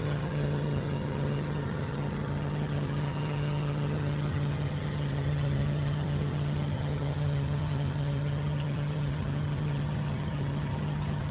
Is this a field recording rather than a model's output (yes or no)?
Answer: no